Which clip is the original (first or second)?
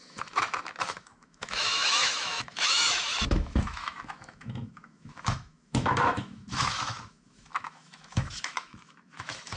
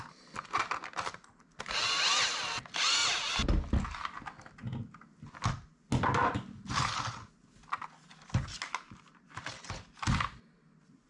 second